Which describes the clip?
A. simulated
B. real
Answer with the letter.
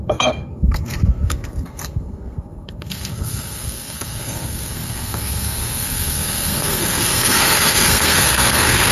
A